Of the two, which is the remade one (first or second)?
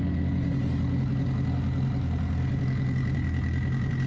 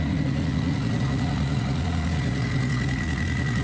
second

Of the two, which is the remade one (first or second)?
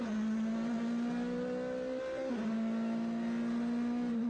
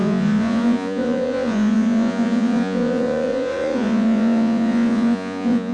second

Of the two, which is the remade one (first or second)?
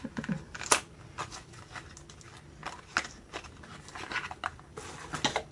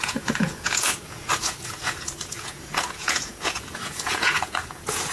second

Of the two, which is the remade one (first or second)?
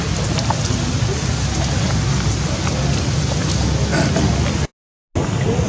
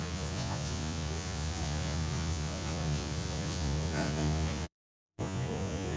second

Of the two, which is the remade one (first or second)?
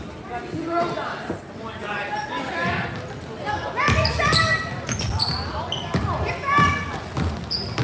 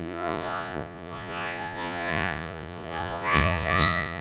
second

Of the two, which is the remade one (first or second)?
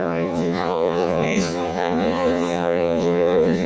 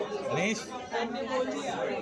first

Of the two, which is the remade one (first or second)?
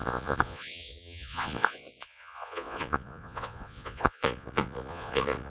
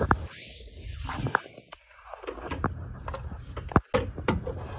first